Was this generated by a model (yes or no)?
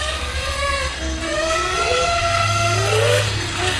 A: yes